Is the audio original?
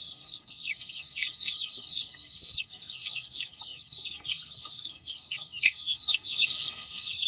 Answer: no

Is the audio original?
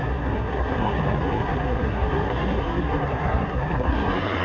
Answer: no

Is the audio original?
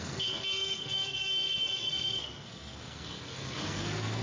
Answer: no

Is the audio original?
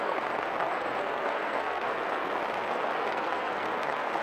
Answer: no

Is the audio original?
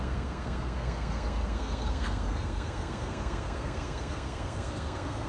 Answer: no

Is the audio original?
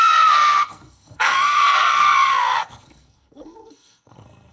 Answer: no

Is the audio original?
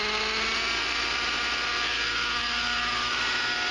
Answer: yes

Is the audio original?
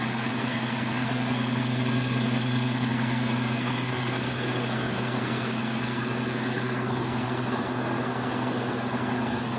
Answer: no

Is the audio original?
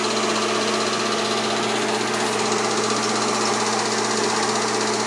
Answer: yes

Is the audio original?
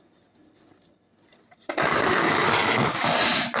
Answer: yes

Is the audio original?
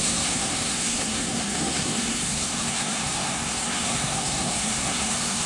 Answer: no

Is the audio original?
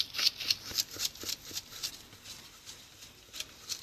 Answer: yes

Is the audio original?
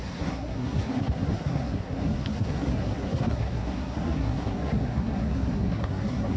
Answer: no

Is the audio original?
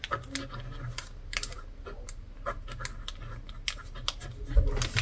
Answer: yes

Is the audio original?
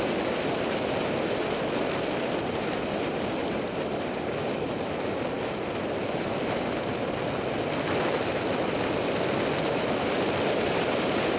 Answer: yes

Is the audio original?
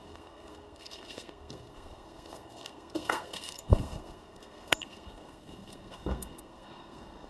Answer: no